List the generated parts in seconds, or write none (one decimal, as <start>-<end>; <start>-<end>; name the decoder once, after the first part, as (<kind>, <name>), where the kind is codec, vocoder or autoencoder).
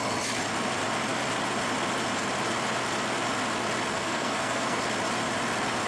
3.9-4.8 (codec, SNAC)